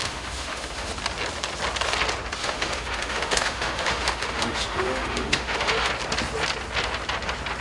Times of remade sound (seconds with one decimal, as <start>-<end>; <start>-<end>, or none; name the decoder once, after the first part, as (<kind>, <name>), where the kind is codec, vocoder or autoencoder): 0.0-0.9 (autoencoder, DAC-VAE); 2.4-5.9